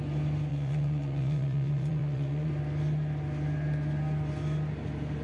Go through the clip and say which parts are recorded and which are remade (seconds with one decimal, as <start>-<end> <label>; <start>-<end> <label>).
0.0-0.5 recorded; 0.5-2.5 remade; 2.5-5.2 recorded